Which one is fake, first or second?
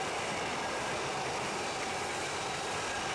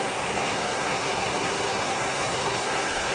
second